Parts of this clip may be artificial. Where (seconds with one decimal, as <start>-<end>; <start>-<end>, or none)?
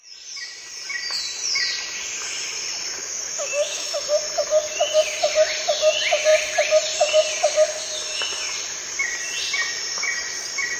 3.0-4.0